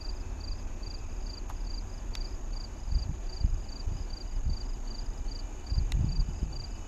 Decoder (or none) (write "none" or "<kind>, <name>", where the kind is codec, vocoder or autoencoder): none